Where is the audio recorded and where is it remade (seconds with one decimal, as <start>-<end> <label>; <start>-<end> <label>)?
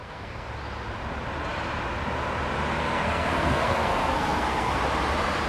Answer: 0.0-0.5 remade; 0.5-2.8 recorded; 2.8-4.8 remade; 4.8-5.5 recorded